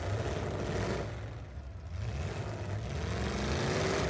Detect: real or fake real